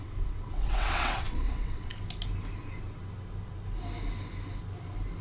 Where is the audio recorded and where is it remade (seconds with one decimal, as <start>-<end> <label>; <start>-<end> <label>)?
0.0-1.9 remade; 1.9-5.2 recorded

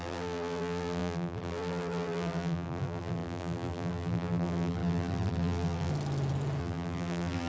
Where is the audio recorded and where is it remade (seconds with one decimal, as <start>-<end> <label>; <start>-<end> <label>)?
0.0-5.9 remade; 5.9-6.6 recorded; 6.6-7.5 remade

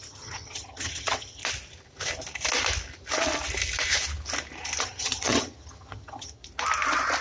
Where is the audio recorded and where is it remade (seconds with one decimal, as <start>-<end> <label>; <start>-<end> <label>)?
0.0-1.4 remade; 1.4-4.8 recorded; 4.8-6.4 remade; 6.4-7.2 recorded

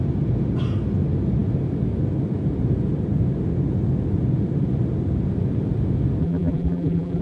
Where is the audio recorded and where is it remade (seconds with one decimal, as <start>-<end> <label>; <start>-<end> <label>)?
0.0-6.2 recorded; 6.2-7.2 remade

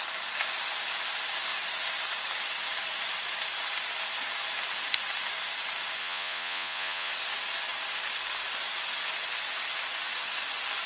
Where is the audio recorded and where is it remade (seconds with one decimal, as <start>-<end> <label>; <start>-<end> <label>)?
0.0-6.0 recorded; 6.0-7.1 remade; 7.1-10.9 recorded

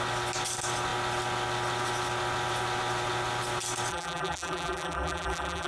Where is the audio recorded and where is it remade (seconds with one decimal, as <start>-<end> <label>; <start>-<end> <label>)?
0.0-3.9 recorded; 3.9-5.7 remade